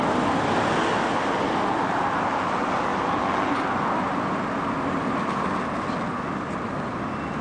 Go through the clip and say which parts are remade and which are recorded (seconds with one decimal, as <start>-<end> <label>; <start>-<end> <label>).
0.0-7.4 recorded